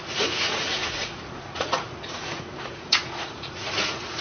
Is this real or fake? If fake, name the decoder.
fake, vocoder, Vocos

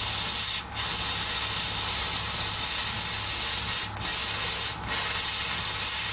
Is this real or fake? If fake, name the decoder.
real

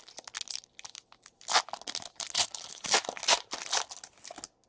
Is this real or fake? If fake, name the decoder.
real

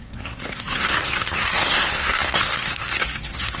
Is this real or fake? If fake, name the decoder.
fake, codec, SNAC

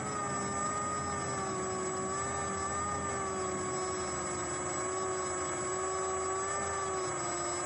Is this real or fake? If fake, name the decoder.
real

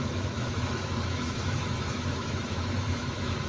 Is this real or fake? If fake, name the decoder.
fake, autoencoder, DAC-VAE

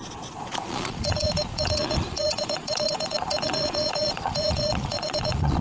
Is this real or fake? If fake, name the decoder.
fake, vocoder, Vocos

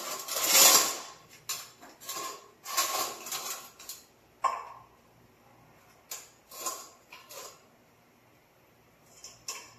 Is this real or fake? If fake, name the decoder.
real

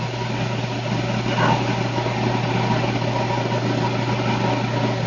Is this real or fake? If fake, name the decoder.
real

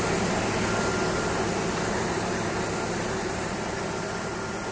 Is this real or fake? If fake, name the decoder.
real